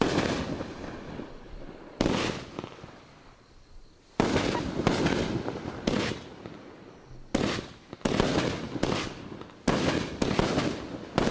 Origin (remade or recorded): recorded